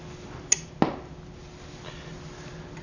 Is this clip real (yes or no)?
yes